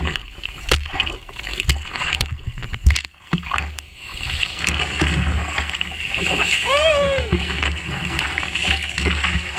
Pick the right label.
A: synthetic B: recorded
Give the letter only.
A